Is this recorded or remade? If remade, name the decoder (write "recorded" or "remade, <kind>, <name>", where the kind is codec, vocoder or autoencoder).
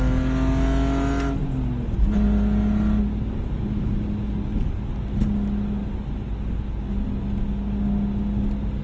recorded